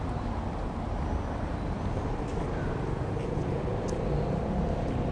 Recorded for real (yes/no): yes